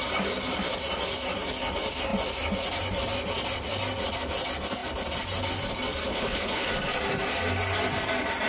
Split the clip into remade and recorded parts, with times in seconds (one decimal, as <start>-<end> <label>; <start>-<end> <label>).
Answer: 0.0-6.1 recorded; 6.1-6.7 remade; 6.7-8.5 recorded